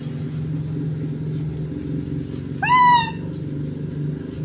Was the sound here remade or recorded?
recorded